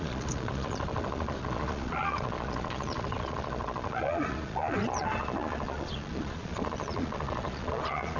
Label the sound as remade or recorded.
remade